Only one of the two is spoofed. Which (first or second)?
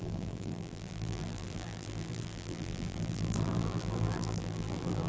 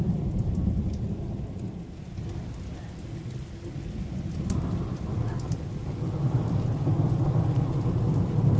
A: first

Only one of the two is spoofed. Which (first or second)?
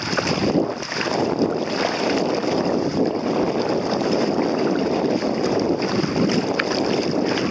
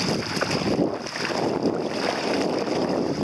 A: first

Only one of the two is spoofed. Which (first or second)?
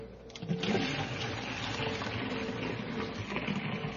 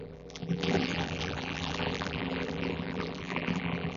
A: second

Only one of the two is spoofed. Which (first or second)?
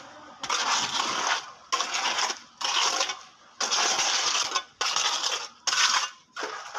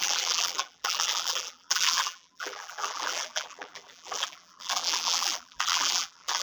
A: second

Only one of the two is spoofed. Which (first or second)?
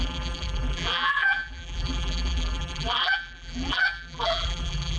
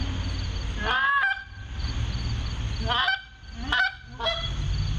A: first